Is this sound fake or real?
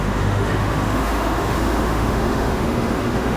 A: fake